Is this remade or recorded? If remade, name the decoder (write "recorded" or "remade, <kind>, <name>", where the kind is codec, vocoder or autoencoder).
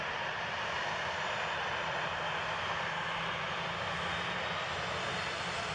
recorded